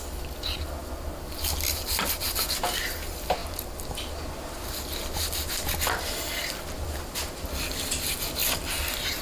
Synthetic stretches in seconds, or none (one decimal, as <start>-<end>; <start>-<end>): none